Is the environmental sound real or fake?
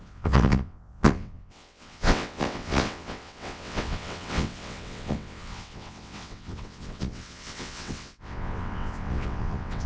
fake